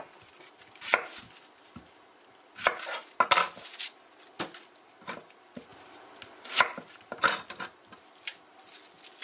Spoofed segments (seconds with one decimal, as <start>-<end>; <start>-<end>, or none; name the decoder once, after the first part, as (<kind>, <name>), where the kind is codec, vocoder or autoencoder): none